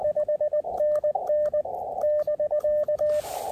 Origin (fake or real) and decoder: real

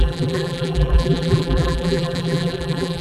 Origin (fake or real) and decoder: fake, vocoder, BigVGAN v2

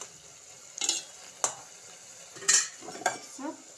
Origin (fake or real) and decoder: real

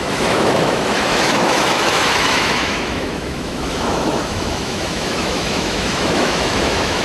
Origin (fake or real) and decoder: fake, autoencoder, DAC-VAE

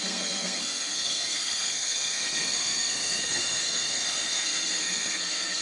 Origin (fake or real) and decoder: fake, codec, SNAC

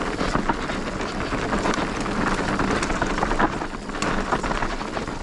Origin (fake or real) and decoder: real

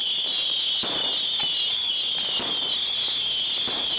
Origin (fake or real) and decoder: real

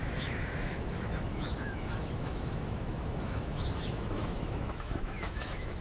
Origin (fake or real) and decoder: fake, autoencoder, DAC-VAE